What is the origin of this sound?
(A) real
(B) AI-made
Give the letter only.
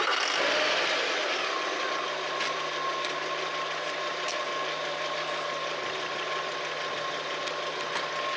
A